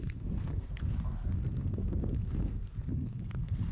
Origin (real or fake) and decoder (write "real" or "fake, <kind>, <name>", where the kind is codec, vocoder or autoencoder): fake, codec, SNAC